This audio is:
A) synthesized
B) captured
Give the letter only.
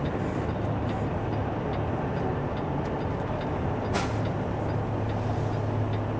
B